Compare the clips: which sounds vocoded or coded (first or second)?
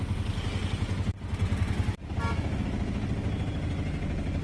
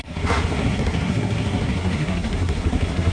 second